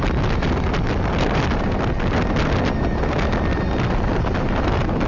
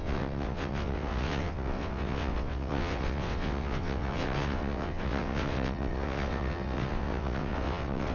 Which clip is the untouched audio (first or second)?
first